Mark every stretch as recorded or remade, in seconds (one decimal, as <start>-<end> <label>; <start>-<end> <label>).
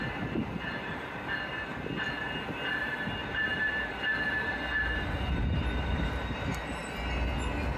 0.0-1.7 remade; 1.7-2.2 recorded; 2.2-6.8 remade; 6.8-7.8 recorded